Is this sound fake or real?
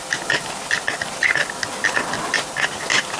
real